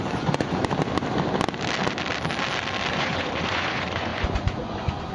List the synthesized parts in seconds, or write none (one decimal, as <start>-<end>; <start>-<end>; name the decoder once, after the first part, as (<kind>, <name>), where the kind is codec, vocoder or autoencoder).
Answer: 0.0-0.6 (vocoder, Vocos); 2.9-5.1